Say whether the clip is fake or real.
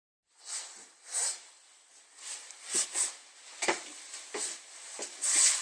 real